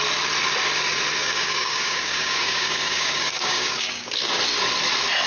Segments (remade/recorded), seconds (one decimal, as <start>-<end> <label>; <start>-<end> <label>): 0.0-1.2 recorded; 1.2-4.4 remade; 4.4-5.3 recorded